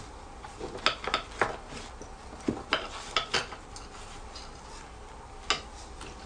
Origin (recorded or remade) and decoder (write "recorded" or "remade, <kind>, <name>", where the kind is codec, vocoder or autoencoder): recorded